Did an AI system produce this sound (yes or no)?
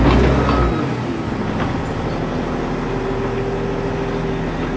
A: no